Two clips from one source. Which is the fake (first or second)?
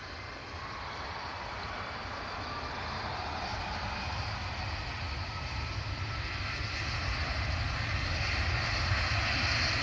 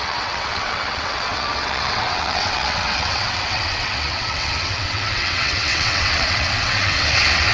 second